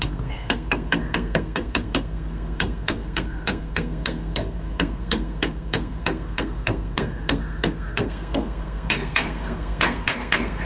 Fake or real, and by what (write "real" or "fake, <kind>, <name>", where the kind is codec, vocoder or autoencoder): fake, codec, SNAC